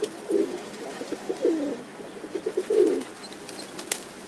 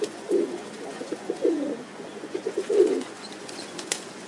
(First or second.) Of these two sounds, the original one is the first